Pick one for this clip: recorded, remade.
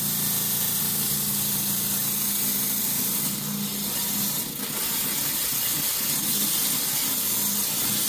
recorded